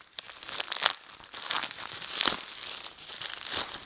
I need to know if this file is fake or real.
real